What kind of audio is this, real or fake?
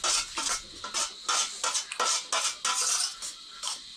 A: real